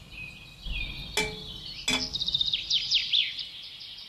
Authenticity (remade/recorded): recorded